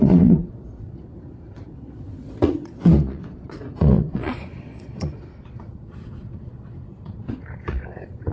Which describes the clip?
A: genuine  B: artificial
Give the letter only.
B